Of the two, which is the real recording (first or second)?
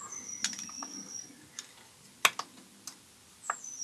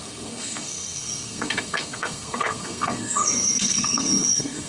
first